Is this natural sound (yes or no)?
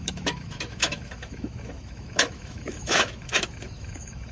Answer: no